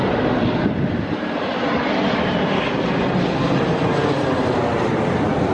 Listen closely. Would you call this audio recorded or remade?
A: recorded